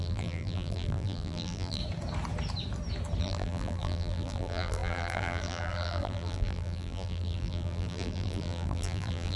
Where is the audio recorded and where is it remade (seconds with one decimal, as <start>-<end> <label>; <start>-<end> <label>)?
0.0-1.8 remade; 1.8-3.2 recorded; 3.2-9.4 remade